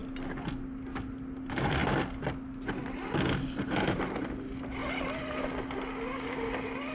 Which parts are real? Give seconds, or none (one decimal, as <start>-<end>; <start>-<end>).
0.0-6.9